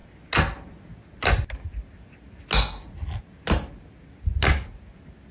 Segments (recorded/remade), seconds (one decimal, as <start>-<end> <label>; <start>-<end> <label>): 0.0-5.3 recorded